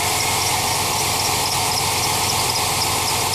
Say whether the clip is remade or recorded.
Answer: recorded